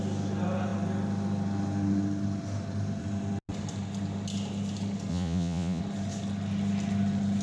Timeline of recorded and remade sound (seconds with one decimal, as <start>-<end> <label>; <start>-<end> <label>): 0.0-5.1 recorded; 5.1-5.8 remade; 5.8-7.4 recorded